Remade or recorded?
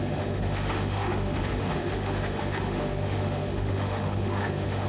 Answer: remade